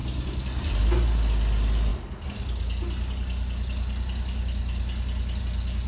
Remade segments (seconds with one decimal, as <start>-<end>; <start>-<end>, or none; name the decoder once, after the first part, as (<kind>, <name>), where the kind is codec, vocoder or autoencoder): none